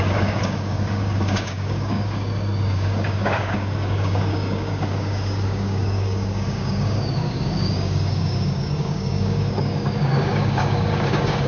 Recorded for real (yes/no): no